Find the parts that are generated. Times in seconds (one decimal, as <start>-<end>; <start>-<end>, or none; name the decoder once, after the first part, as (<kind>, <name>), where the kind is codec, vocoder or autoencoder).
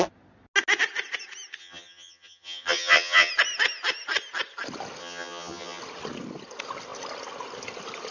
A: 1.6-3.3 (vocoder, HiFi-GAN); 5.0-5.8